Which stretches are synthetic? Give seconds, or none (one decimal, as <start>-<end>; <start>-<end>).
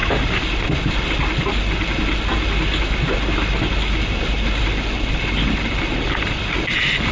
0.9-7.1